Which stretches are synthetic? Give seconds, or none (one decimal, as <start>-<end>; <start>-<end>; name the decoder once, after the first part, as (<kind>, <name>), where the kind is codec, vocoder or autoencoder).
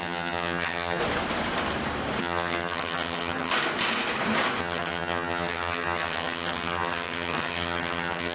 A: 0.0-1.0 (vocoder, HiFi-GAN); 2.2-3.5; 4.6-8.3